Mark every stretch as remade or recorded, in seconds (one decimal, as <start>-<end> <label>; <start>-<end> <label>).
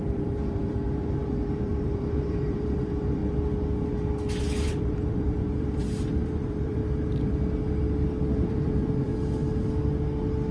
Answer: 0.0-3.2 remade; 3.2-4.4 recorded; 4.4-6.8 remade; 6.8-8.5 recorded; 8.5-9.1 remade; 9.1-10.5 recorded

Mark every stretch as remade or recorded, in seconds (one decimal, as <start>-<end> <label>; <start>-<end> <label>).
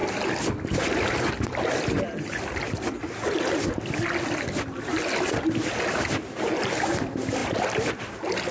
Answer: 0.0-8.5 recorded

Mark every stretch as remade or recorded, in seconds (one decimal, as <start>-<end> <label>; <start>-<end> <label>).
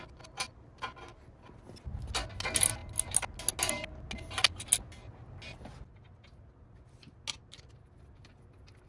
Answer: 0.0-8.9 recorded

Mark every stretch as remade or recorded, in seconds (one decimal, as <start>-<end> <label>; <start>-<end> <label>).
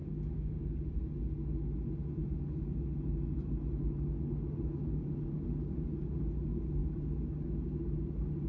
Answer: 0.0-0.9 remade; 0.9-8.5 recorded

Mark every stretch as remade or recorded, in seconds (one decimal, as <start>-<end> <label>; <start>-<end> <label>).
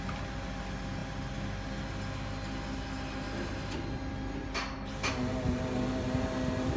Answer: 0.0-6.8 recorded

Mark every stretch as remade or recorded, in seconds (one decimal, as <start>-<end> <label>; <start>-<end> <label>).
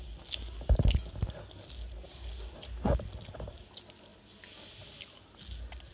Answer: 0.0-5.9 recorded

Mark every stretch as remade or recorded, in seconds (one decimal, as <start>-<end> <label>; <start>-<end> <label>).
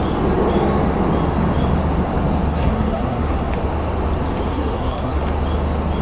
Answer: 0.0-2.5 recorded; 2.5-3.5 remade; 3.5-4.5 recorded; 4.5-5.2 remade; 5.2-6.0 recorded